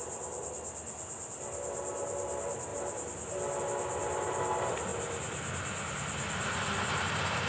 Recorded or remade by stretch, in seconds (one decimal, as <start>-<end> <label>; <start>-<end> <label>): 0.0-7.5 recorded